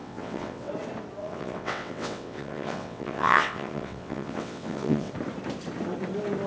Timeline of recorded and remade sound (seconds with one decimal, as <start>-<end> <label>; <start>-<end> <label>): 0.0-0.7 remade; 0.7-1.2 recorded; 1.2-5.1 remade; 5.1-6.5 recorded